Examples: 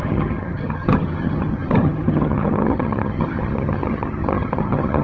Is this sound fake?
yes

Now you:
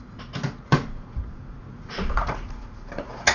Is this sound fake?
yes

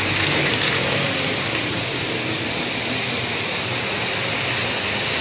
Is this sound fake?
no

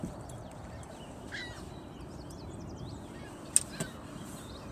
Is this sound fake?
no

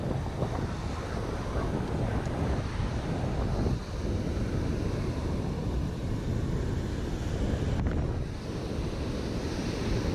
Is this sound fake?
no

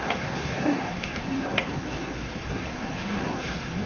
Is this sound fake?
yes